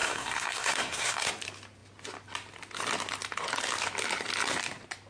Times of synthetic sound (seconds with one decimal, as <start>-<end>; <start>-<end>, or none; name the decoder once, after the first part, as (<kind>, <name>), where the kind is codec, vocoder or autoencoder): 0.0-1.3 (codec, SNAC)